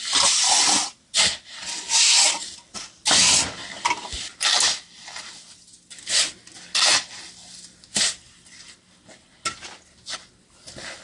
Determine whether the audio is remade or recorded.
recorded